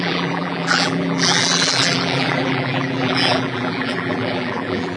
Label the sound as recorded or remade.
remade